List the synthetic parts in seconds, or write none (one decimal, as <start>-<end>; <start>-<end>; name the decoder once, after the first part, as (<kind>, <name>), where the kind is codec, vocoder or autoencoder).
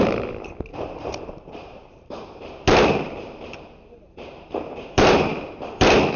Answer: 0.0-6.2 (vocoder, BigVGAN v2)